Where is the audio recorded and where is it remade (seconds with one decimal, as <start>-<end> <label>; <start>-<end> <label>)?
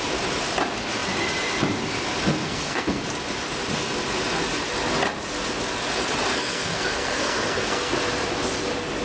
0.0-2.4 recorded; 2.4-3.0 remade; 3.0-6.3 recorded; 6.3-7.9 remade; 7.9-9.0 recorded